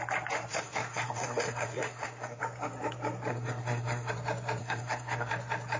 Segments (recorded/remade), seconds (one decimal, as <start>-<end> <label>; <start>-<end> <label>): 0.0-0.5 recorded; 0.5-2.4 remade; 2.4-3.3 recorded; 3.3-4.1 remade; 4.1-4.6 recorded; 4.6-5.3 remade; 5.3-5.8 recorded